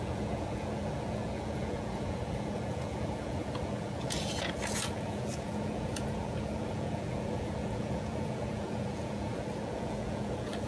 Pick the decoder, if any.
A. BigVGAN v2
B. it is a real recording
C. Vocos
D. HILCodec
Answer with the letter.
C